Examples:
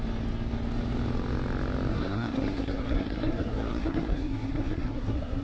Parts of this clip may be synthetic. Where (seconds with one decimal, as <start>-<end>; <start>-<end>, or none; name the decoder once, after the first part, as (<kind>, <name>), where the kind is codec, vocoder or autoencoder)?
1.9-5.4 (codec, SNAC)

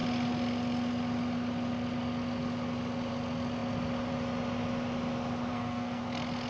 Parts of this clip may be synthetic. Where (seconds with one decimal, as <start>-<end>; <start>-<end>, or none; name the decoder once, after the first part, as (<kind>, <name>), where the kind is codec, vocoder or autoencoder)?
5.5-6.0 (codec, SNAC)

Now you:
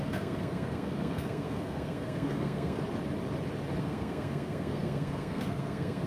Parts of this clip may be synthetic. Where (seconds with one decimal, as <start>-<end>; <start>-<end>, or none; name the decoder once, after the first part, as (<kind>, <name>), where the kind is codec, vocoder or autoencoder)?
0.0-2.8 (codec, SNAC); 3.8-6.1

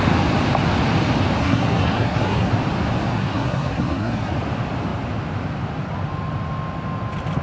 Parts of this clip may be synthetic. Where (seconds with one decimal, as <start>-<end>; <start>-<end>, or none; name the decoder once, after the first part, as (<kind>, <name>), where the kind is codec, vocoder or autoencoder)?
1.4-2.5 (codec, SNAC); 3.1-4.3